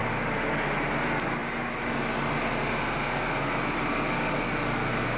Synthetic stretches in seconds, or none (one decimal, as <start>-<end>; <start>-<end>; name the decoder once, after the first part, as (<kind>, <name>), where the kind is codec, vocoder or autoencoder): none